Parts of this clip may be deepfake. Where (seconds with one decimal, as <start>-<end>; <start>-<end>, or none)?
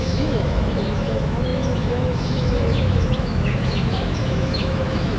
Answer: 0.0-5.2